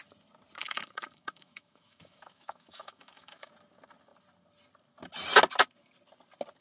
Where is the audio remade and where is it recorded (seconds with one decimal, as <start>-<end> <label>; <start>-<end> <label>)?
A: 0.0-0.6 recorded; 0.6-3.5 remade; 3.5-6.6 recorded